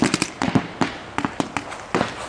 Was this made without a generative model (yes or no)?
yes